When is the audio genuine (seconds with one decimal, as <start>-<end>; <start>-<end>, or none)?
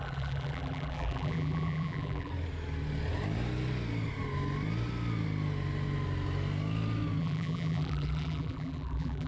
2.3-7.2